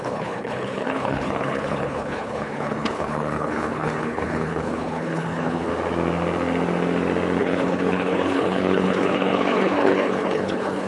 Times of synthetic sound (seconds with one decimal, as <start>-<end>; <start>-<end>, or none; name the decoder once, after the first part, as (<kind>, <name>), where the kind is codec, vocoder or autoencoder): 0.0-5.7 (codec, HILCodec); 7.4-10.9